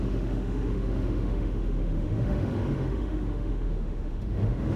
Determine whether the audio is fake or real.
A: fake